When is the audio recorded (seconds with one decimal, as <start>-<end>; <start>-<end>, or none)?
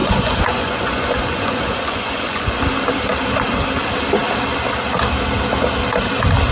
2.6-6.5